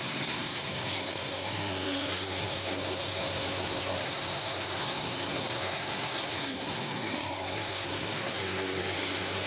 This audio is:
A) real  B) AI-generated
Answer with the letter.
B